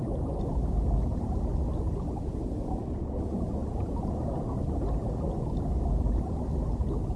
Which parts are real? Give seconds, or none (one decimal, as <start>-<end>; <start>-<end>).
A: 0.0-7.2